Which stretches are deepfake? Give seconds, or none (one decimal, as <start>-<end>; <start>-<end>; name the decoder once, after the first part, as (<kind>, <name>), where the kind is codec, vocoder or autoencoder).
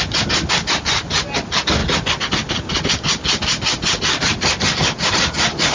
none